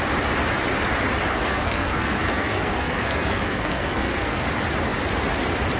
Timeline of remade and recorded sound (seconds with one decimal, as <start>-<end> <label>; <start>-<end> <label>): 0.0-1.3 recorded; 1.3-4.5 remade; 4.5-5.8 recorded